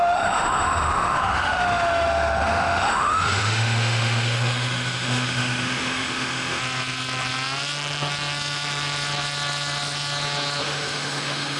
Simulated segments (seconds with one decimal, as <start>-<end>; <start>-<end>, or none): 0.0-6.6; 10.6-11.6